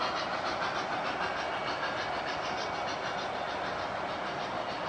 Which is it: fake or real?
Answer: real